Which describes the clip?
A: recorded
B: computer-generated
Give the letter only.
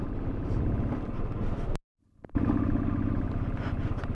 A